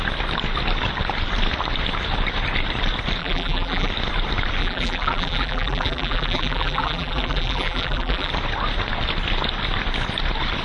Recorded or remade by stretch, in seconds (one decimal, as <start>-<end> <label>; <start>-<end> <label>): 0.0-3.2 recorded; 3.2-3.9 remade; 3.9-4.6 recorded; 4.6-8.3 remade; 8.3-10.6 recorded